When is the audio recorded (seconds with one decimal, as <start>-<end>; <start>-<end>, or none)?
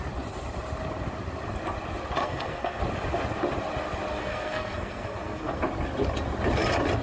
0.0-2.2; 2.8-4.2; 5.6-7.0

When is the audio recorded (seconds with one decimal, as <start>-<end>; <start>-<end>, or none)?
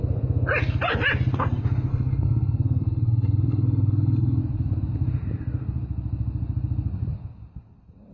0.0-1.9; 4.4-8.1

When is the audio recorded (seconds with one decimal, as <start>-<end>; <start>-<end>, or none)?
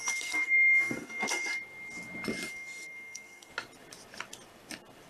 1.6-2.5; 3.5-5.1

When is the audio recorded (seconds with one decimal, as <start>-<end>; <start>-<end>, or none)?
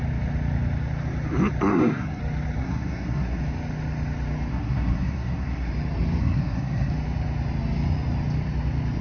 0.0-1.7; 2.2-2.6; 3.4-4.5; 5.7-6.2; 6.9-9.0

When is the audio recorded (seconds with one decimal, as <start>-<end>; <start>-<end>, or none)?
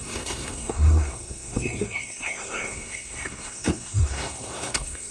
none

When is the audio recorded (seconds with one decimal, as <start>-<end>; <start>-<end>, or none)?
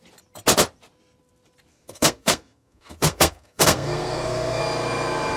0.0-1.7; 4.6-5.4